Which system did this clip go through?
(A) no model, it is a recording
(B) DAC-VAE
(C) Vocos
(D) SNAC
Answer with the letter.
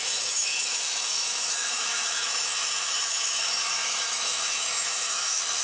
B